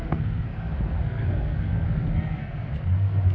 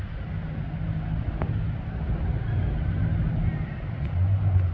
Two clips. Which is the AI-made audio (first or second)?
first